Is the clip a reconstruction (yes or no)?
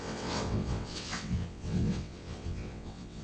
yes